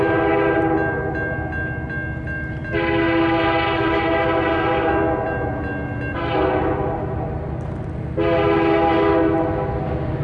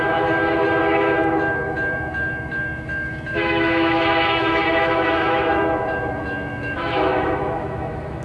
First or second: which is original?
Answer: first